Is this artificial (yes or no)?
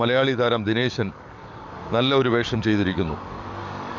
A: yes